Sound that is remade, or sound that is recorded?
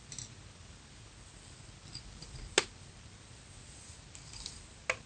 recorded